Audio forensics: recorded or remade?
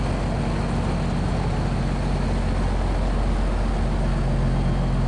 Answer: recorded